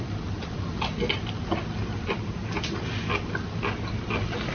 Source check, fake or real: real